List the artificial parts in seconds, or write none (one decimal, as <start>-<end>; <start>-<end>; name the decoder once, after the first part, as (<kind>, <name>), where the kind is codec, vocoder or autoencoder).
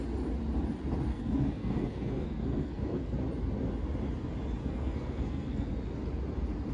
1.1-3.1 (codec, SNAC); 4.6-5.7